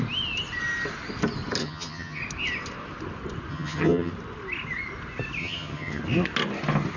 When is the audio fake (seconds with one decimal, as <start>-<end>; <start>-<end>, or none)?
1.6-2.2; 3.5-4.1; 5.4-6.0